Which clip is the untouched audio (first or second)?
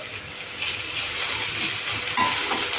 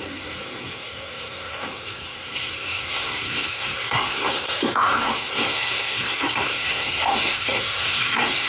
first